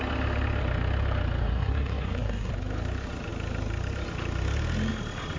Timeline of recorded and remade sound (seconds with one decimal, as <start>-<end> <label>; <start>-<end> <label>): 0.0-1.4 recorded; 1.4-2.5 remade; 2.5-5.4 recorded

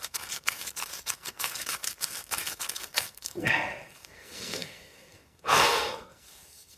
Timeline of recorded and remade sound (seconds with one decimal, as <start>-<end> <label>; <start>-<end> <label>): 0.0-6.8 remade

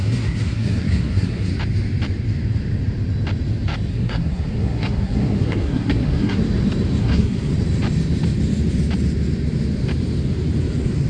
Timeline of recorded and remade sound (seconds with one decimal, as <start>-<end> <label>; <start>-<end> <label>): 0.0-1.5 remade; 1.5-3.9 recorded; 3.9-6.4 remade; 6.4-7.0 recorded; 7.0-7.5 remade; 7.5-11.1 recorded

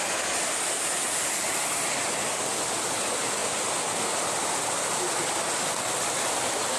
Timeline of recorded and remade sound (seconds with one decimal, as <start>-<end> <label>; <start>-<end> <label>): 0.0-6.8 recorded

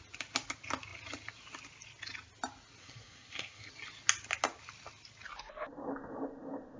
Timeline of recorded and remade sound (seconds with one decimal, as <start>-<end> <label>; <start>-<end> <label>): 0.0-2.8 recorded; 2.8-3.7 remade; 3.7-6.8 recorded

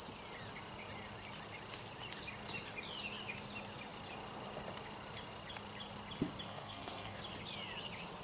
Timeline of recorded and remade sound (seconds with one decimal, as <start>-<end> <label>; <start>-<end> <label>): 0.0-6.5 recorded; 6.5-7.2 remade; 7.2-8.2 recorded

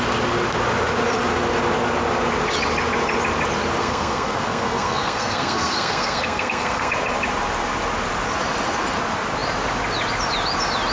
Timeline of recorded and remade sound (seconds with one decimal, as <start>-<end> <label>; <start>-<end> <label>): 0.0-3.8 recorded; 3.8-6.9 remade; 6.9-10.9 recorded

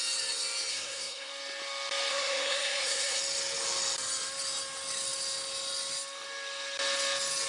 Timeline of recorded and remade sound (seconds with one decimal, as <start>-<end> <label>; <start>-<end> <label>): 0.0-0.7 recorded; 0.7-1.3 remade; 1.3-2.1 recorded; 2.1-3.2 remade; 3.2-7.5 recorded